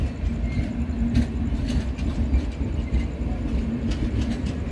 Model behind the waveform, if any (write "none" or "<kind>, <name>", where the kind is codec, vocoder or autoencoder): none